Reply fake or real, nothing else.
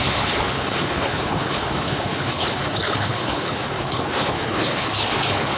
fake